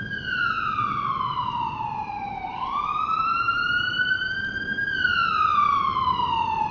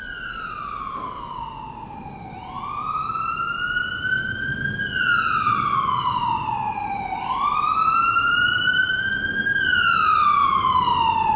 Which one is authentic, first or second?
second